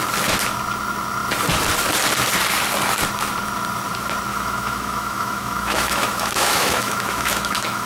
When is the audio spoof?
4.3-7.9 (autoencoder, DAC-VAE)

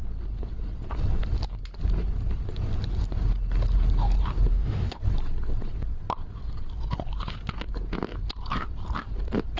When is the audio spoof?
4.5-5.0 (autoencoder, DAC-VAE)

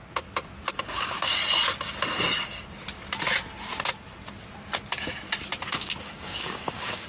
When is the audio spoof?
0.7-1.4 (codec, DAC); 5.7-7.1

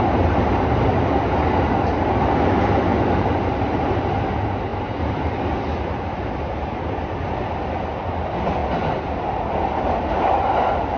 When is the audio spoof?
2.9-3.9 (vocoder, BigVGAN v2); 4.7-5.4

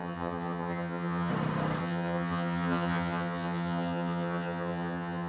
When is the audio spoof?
0.0-1.3 (vocoder, HiFi-GAN); 1.8-5.3

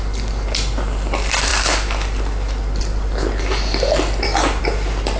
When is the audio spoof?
none

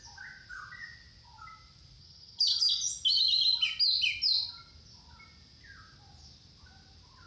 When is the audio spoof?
2.0-2.7 (vocoder, HiFi-GAN)

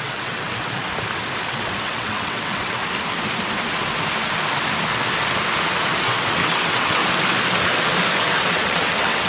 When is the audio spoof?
0.0-0.8 (vocoder, WaveNeXt); 1.5-2.8; 6.0-7.0; 8.2-9.3